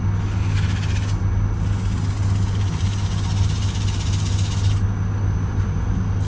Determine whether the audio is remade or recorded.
recorded